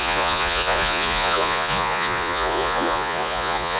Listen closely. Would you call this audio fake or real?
fake